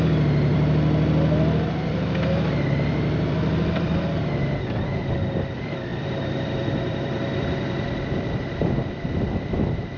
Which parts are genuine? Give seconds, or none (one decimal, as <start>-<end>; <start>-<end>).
0.0-0.5; 4.2-5.9; 8.7-10.0